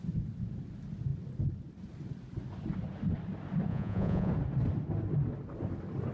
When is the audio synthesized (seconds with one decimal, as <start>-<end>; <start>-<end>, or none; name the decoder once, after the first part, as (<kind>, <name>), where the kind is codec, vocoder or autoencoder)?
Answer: 3.7-4.3 (vocoder, Vocos)